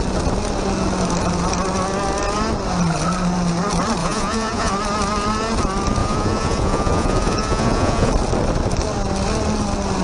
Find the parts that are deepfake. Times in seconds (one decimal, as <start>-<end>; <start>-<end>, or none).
4.0-4.7; 6.0-8.1